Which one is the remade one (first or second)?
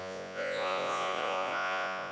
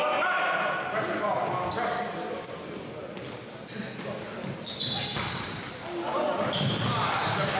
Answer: first